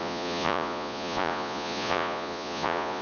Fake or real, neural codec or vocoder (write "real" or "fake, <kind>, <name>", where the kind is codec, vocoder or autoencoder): fake, vocoder, Vocos